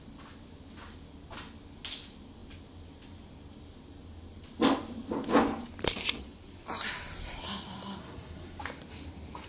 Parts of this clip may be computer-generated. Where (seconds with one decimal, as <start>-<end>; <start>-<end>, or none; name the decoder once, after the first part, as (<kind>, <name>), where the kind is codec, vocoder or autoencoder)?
8.0-8.6 (codec, SNAC)